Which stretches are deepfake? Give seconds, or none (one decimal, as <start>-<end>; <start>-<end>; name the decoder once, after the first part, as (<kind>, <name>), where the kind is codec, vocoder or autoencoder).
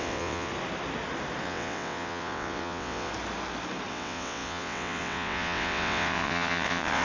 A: 0.0-0.5 (vocoder, WaveNeXt); 1.4-3.1; 3.9-7.0